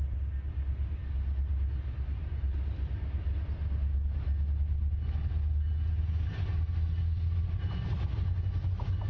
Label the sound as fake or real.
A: real